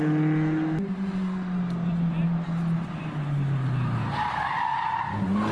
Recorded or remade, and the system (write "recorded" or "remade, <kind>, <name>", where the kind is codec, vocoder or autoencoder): recorded